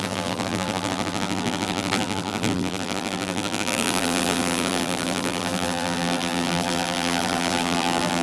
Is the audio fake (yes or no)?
yes